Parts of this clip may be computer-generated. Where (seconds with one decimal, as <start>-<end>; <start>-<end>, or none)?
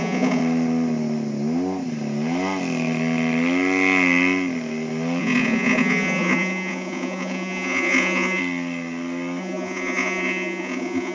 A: 0.0-0.4; 5.2-8.4; 9.4-11.1